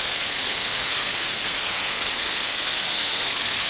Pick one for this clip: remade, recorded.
remade